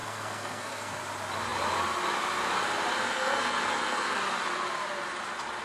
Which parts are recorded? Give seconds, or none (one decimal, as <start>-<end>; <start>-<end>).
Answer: 1.0-3.0; 4.2-5.6